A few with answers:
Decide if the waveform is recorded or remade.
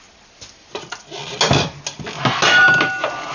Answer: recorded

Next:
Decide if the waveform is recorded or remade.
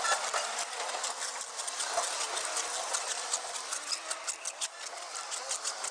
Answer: recorded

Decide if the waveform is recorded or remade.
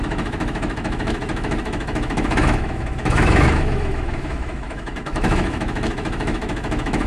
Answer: remade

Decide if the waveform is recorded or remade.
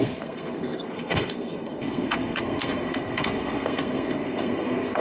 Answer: remade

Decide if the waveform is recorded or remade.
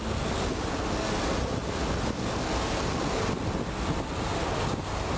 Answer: recorded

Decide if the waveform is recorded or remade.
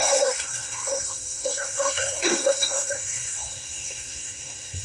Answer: remade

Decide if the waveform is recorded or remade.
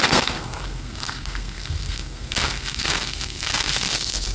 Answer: remade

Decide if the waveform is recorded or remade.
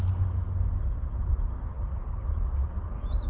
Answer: recorded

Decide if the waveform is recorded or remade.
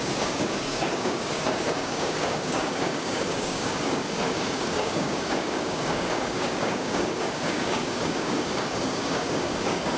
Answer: remade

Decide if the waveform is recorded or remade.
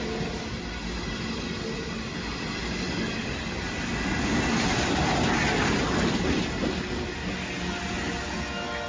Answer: recorded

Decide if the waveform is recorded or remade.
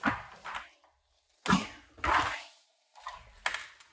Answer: recorded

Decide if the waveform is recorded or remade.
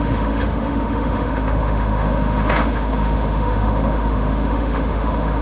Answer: remade